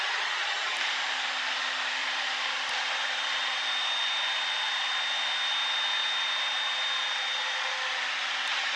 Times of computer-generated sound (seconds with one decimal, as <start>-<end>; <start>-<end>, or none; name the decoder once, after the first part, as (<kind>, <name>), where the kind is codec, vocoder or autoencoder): 2.0-3.7 (vocoder, BigVGAN v2)